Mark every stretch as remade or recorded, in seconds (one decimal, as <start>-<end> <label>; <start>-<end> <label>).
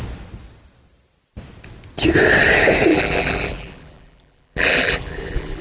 0.0-2.9 recorded; 2.9-5.6 remade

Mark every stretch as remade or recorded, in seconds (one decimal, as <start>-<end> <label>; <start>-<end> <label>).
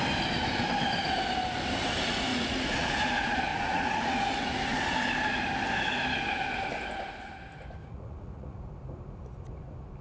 0.0-2.3 recorded; 2.3-3.1 remade; 3.1-3.5 recorded; 3.5-4.9 remade; 4.9-7.8 recorded; 7.8-8.6 remade; 8.6-10.0 recorded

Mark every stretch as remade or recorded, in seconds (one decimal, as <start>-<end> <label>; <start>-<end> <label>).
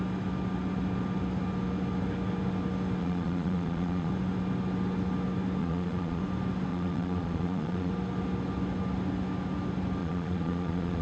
0.0-3.0 recorded; 3.0-4.1 remade; 4.1-5.6 recorded; 5.6-6.2 remade; 6.2-6.7 recorded; 6.7-7.9 remade; 7.9-10.0 recorded; 10.0-11.0 remade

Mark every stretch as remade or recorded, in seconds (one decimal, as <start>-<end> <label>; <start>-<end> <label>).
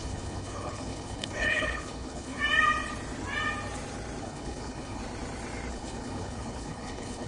0.0-2.4 remade; 2.4-4.2 recorded; 4.2-5.0 remade; 5.0-5.7 recorded; 5.7-7.3 remade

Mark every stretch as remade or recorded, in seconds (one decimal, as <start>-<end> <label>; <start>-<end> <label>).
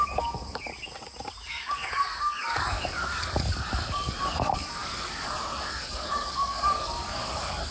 0.0-0.7 remade; 0.7-1.5 recorded; 1.5-7.7 remade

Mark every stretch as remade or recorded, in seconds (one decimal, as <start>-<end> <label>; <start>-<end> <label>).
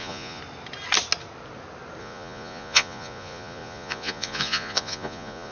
0.0-0.4 remade; 0.4-2.0 recorded; 2.0-5.5 remade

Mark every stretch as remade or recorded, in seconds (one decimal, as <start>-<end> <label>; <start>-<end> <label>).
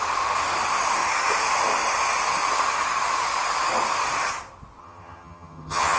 0.0-4.8 recorded; 4.8-6.0 remade